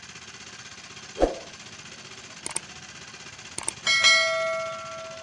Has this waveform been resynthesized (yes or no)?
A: no